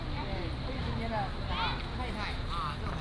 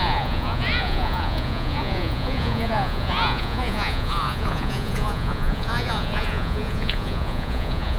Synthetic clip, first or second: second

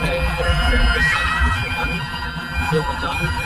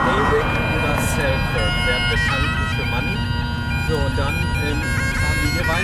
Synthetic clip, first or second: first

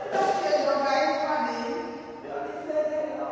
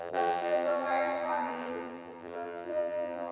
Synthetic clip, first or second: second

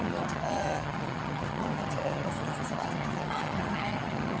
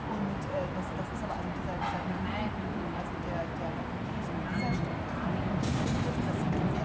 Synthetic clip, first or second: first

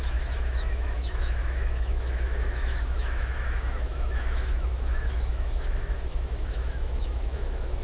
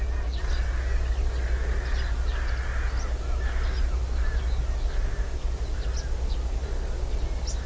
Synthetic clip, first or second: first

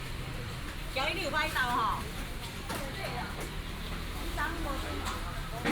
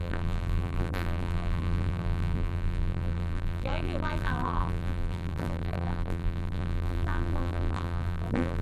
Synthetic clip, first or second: second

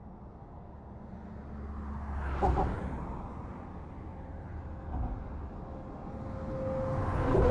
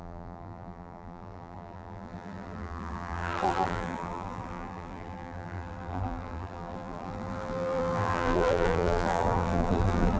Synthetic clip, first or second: second